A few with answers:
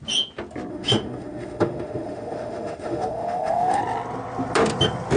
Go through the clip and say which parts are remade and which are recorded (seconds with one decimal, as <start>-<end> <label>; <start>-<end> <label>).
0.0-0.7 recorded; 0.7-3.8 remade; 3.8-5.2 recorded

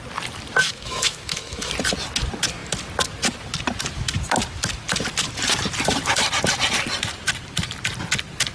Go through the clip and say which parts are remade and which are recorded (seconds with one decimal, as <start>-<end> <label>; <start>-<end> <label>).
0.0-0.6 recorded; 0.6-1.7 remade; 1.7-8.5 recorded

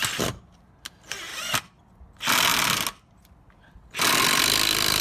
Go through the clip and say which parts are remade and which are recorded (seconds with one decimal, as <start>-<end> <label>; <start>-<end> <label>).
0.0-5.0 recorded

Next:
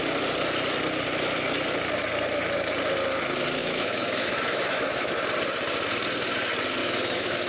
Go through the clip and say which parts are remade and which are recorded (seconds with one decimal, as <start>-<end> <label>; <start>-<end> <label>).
0.0-3.6 recorded; 3.6-5.1 remade; 5.1-6.8 recorded; 6.8-7.5 remade

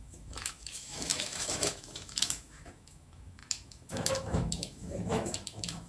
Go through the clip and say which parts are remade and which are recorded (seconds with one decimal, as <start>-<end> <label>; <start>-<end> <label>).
0.0-5.9 remade

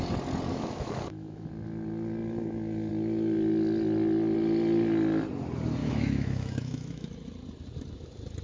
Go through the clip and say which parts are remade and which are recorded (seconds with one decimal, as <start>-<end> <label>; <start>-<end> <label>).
0.0-0.5 recorded; 0.5-1.5 remade; 1.5-5.8 recorded; 5.8-7.1 remade; 7.1-8.4 recorded

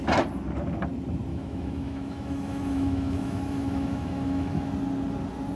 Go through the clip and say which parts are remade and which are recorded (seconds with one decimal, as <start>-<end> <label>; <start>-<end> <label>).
0.0-1.3 recorded; 1.3-4.7 remade; 4.7-5.6 recorded